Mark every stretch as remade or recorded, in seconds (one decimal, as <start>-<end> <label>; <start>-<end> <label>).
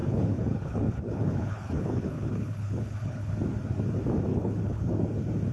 0.0-3.3 remade; 3.3-4.3 recorded; 4.3-4.9 remade; 4.9-5.5 recorded